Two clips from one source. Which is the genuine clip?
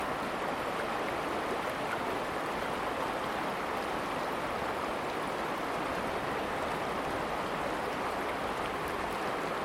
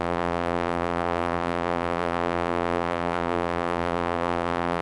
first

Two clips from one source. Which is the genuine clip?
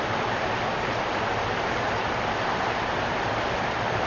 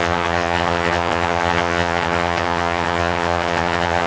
first